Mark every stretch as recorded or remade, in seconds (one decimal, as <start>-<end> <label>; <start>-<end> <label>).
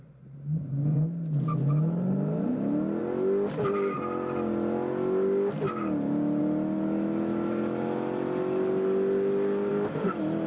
0.0-10.5 recorded